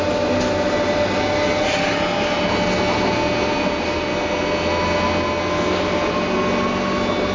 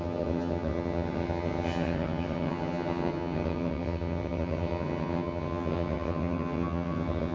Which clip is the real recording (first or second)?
first